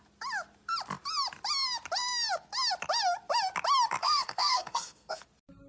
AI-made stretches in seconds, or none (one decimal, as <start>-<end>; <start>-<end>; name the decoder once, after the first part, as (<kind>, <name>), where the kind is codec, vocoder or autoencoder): 4.0-5.2 (codec, SNAC)